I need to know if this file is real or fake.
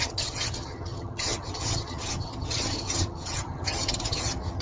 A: fake